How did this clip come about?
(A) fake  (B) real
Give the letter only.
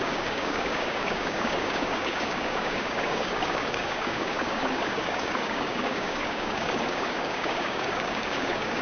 A